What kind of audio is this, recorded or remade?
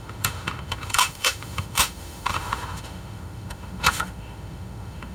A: remade